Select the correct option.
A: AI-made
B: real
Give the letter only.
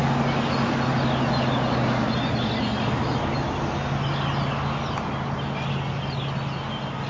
B